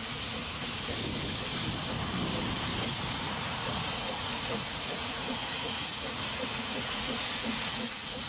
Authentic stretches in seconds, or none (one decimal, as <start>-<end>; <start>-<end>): 0.4-3.1